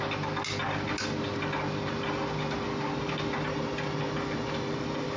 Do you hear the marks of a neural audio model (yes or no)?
no